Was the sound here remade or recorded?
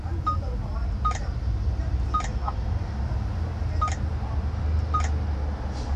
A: recorded